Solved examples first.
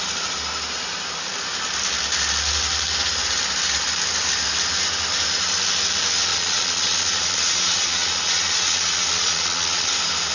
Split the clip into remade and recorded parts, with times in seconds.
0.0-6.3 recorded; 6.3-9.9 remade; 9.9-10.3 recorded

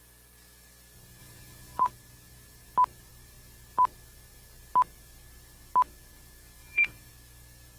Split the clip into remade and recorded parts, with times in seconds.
0.0-1.2 recorded; 1.2-1.9 remade; 1.9-6.6 recorded; 6.6-7.1 remade; 7.1-7.8 recorded

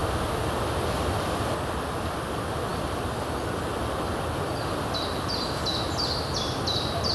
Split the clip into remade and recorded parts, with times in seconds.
0.0-7.1 recorded

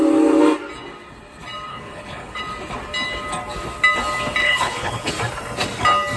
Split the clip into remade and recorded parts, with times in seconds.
0.0-1.7 recorded; 1.7-2.4 remade; 2.4-4.4 recorded; 4.4-5.1 remade; 5.1-6.2 recorded

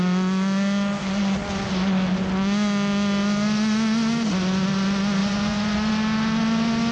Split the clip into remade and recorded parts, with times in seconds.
0.0-5.2 recorded; 5.2-5.9 remade; 5.9-6.9 recorded